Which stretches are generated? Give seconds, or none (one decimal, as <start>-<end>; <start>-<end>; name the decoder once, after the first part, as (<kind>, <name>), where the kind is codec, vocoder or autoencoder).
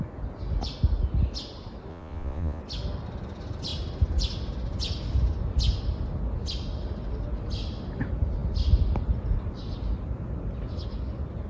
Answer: 1.9-2.6 (vocoder, Vocos)